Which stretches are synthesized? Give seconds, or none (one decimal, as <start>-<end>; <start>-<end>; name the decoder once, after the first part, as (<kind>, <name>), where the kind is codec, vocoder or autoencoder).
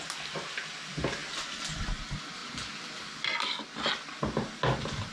none